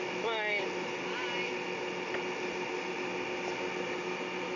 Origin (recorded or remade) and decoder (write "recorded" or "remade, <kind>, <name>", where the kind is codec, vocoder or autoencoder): recorded